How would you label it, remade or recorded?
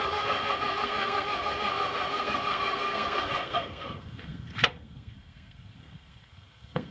remade